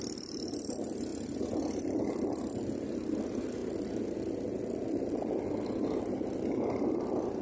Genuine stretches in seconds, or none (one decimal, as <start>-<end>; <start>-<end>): 0.0-7.4

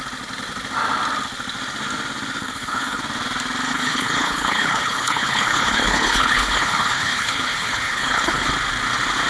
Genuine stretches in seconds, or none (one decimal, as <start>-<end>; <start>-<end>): 0.0-2.4; 3.0-3.7; 8.5-9.3

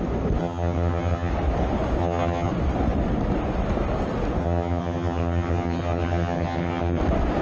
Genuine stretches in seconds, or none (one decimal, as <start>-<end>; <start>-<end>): 0.0-0.4; 1.3-2.0; 2.5-4.4; 7.0-7.4

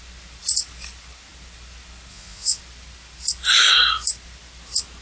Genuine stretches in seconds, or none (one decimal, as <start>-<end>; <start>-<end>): 0.0-2.1; 2.6-5.0

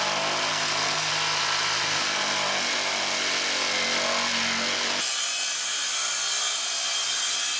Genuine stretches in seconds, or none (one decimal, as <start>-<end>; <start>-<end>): 0.0-0.5; 1.1-7.6

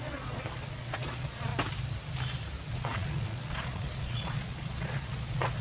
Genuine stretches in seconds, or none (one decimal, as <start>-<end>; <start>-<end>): 1.5-2.7